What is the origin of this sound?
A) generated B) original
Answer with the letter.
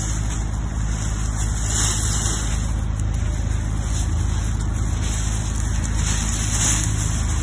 B